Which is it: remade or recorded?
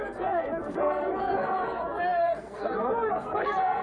remade